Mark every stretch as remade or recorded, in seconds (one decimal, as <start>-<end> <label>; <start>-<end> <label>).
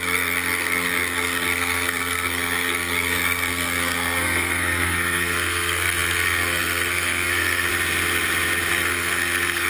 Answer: 0.0-7.7 remade; 7.7-8.7 recorded; 8.7-9.7 remade